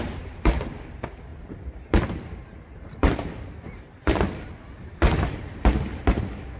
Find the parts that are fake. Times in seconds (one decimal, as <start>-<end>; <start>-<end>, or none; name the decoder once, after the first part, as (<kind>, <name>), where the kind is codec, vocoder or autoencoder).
none